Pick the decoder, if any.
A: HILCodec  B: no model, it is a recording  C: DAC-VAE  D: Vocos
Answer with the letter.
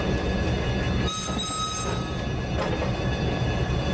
B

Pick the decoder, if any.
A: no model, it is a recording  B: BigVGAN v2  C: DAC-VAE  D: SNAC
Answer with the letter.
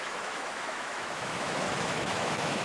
C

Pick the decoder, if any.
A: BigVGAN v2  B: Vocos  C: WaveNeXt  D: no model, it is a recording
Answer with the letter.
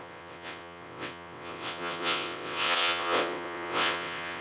C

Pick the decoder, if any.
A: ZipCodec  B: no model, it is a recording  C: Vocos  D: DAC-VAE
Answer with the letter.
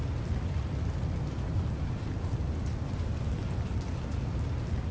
B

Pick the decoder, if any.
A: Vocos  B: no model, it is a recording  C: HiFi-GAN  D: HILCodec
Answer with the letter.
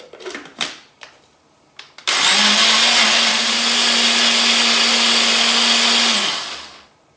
B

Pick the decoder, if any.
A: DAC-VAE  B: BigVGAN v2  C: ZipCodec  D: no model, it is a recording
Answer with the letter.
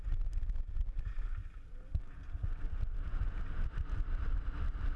D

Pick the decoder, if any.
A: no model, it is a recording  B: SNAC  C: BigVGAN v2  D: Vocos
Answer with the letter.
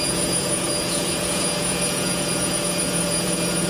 D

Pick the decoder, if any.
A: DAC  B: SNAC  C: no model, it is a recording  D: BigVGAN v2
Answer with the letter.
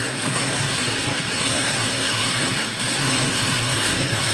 B